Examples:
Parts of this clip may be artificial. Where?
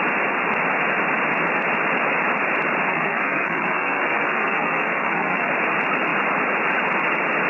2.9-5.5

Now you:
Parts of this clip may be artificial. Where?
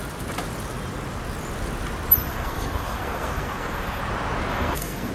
2.3-4.0; 4.5-5.1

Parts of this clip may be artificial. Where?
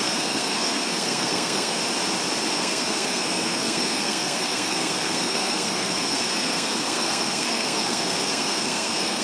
0.0-1.8; 2.5-9.2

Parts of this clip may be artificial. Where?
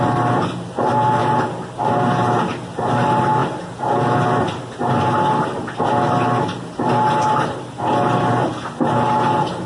none